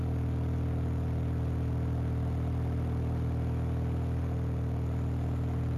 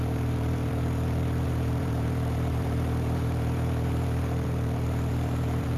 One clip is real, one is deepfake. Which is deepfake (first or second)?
second